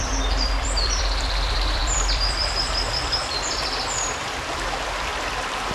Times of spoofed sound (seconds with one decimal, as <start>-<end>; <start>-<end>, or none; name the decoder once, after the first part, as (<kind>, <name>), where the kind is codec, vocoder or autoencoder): 0.0-5.1 (vocoder, BigVGAN v2)

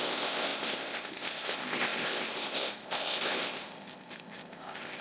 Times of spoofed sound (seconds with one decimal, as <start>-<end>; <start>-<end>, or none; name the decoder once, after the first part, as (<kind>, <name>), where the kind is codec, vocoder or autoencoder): 0.0-5.0 (codec, ZipCodec)

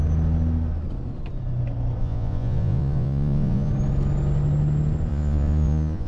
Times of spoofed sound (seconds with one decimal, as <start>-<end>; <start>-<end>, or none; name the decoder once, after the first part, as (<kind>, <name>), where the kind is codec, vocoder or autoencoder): 2.0-3.7 (vocoder, Vocos); 5.1-6.1

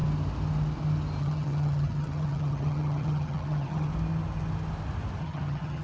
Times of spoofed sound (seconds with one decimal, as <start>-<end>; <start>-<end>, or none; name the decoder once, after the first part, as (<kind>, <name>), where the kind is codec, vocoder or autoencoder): 1.2-3.9 (vocoder, HiFi-GAN); 5.2-5.8

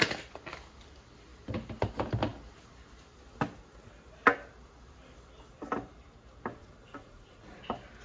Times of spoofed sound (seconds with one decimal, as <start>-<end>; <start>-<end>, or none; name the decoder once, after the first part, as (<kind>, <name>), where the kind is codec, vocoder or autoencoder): 6.6-7.6 (vocoder, Vocos)

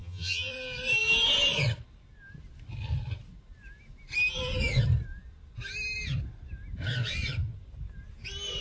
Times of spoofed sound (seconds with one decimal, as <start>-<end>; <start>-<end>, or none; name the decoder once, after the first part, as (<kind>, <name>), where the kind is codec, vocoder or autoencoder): 0.0-0.5 (vocoder, HiFi-GAN)

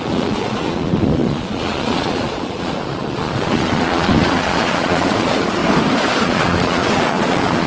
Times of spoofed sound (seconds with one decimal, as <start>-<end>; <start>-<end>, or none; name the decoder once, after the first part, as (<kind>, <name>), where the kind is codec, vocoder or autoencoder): 0.0-5.6 (vocoder, Vocos); 6.2-7.7